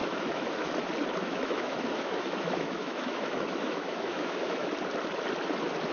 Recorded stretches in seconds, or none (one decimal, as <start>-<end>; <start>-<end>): 0.7-1.2; 4.7-5.9